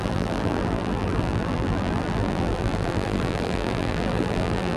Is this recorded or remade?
remade